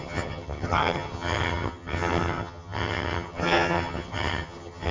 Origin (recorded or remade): remade